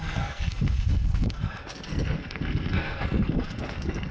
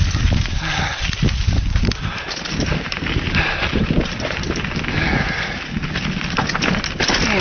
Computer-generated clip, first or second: first